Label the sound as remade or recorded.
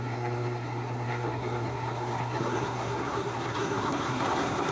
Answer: remade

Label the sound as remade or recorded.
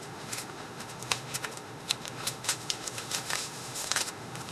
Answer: remade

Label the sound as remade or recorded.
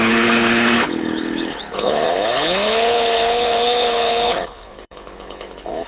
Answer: remade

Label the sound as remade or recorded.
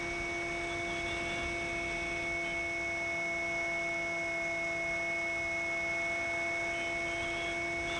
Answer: recorded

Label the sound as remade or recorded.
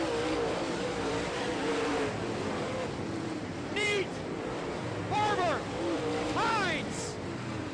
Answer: remade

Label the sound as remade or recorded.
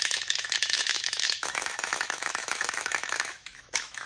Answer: remade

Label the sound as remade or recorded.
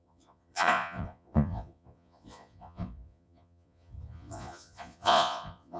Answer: remade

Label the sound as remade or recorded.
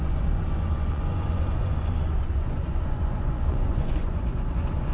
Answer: remade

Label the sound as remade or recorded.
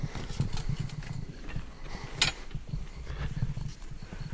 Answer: recorded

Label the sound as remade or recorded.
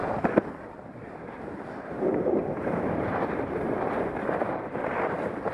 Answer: remade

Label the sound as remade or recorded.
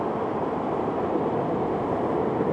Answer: recorded